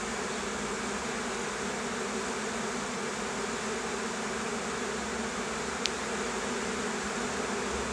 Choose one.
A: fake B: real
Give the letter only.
B